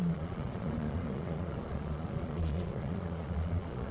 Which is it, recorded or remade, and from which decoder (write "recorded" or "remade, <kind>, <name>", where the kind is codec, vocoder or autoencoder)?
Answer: remade, vocoder, Vocos